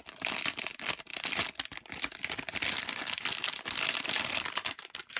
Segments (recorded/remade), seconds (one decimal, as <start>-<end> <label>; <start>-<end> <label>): 0.0-5.2 recorded

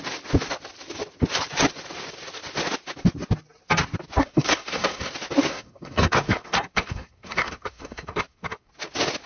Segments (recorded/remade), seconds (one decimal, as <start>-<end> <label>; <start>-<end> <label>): 0.0-4.2 recorded; 4.2-5.1 remade; 5.1-5.5 recorded; 5.5-8.7 remade; 8.7-9.3 recorded

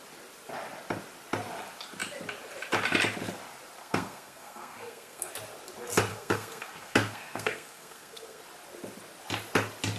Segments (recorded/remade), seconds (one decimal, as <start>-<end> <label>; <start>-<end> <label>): 0.0-3.8 recorded; 3.8-5.3 remade; 5.3-6.1 recorded; 6.1-8.4 remade; 8.4-10.0 recorded

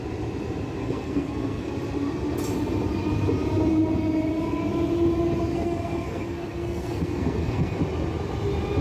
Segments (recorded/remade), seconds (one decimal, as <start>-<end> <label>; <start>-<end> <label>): 0.0-0.8 recorded; 0.8-1.7 remade; 1.7-5.5 recorded; 5.5-7.8 remade; 7.8-8.8 recorded

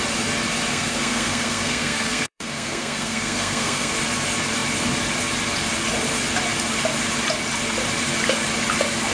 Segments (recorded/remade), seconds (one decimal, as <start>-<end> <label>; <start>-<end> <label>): 0.0-0.7 recorded; 0.7-3.9 remade; 3.9-9.1 recorded